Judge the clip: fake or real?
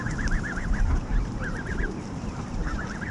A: fake